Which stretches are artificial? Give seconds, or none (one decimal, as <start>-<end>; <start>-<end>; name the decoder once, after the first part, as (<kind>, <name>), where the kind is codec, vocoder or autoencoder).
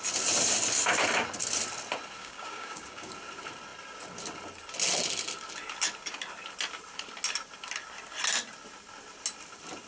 2.2-3.1 (codec, DAC)